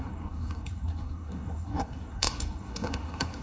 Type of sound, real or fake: fake